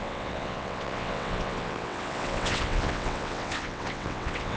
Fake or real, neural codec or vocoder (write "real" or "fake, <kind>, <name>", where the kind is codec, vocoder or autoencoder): fake, vocoder, WaveNeXt